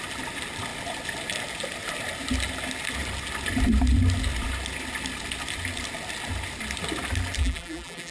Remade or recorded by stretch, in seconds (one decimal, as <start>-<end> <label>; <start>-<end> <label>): 0.0-7.4 recorded; 7.4-8.1 remade